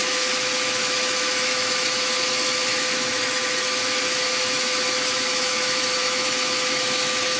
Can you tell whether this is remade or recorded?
remade